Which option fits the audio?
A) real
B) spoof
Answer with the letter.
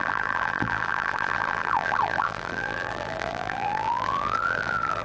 B